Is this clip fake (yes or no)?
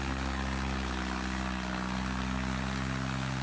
no